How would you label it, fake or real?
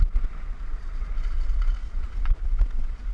fake